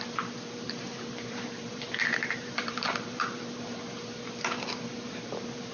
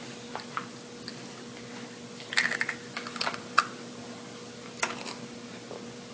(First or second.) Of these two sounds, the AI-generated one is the first